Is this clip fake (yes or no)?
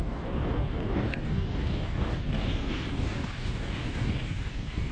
yes